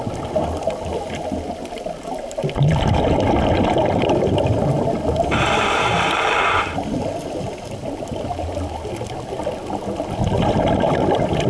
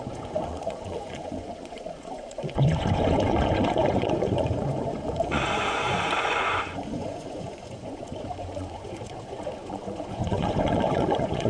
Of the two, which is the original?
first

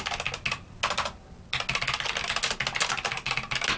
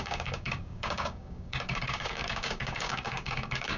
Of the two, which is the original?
first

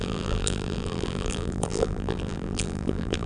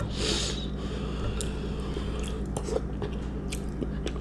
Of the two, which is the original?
second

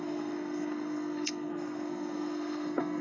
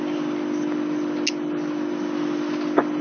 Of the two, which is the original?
second